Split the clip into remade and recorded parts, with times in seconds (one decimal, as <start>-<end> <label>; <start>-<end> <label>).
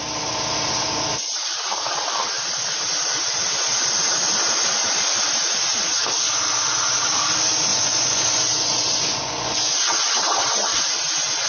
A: 0.0-7.7 recorded; 7.7-9.7 remade; 9.7-11.5 recorded